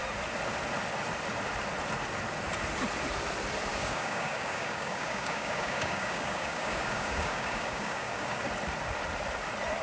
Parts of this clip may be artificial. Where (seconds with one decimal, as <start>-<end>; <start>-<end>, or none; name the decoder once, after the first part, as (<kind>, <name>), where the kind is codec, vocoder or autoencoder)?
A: 3.7-8.4 (codec, DAC)